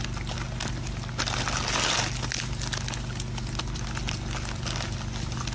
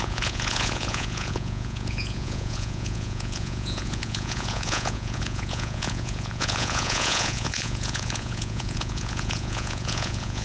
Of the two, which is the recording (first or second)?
first